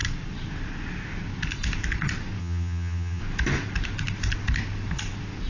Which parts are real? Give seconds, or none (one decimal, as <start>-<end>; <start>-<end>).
0.0-2.4; 3.2-5.5